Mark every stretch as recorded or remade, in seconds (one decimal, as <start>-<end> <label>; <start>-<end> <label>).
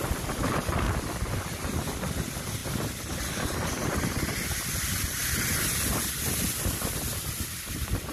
0.0-8.1 recorded